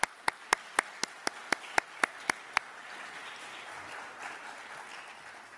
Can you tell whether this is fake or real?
real